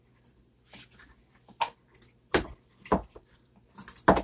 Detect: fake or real fake